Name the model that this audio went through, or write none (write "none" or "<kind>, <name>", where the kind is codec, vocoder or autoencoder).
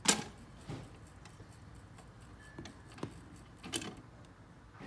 none